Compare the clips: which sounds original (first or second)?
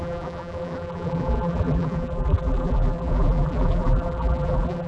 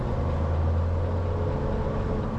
second